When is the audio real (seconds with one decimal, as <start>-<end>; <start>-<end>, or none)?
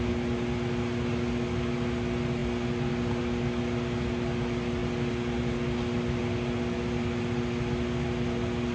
0.0-8.7